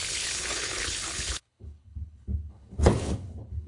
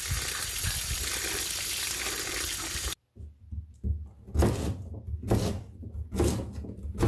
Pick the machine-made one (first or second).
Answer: first